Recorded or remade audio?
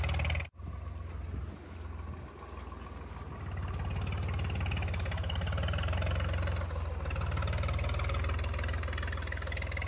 recorded